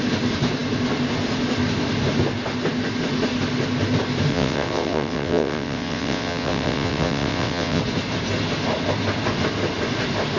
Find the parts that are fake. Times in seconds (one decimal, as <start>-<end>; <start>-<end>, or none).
4.3-7.8